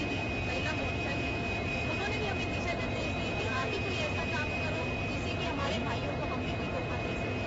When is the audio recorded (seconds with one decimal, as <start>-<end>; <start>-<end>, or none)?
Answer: 4.3-5.2